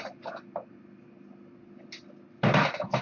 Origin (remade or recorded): recorded